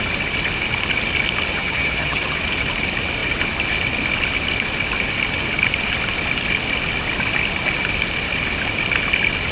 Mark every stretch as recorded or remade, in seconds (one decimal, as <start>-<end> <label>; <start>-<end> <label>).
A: 0.0-1.5 recorded; 1.5-2.4 remade; 2.4-9.5 recorded